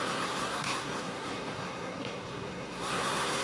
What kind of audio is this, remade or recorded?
remade